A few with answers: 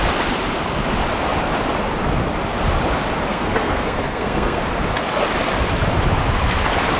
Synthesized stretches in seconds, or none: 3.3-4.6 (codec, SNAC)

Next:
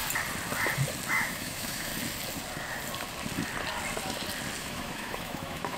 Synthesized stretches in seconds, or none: 1.1-1.9 (autoencoder, DAC-VAE); 4.6-5.8

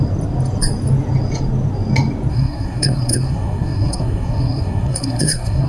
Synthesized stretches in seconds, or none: 2.3-5.7 (codec, SNAC)

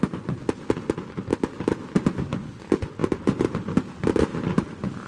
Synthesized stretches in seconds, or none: 1.3-2.0 (vocoder, BigVGAN v2)